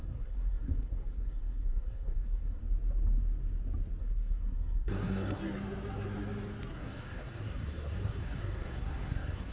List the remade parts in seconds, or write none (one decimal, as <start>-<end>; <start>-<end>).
0.0-2.6; 4.0-5.4; 6.7-9.5